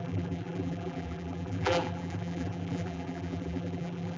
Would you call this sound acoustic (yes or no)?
no